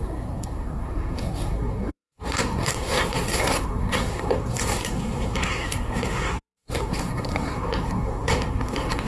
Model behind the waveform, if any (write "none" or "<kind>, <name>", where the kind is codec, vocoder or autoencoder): codec, SNAC